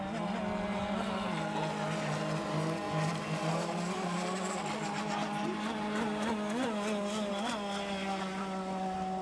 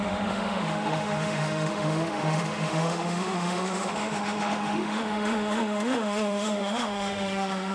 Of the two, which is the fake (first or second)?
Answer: second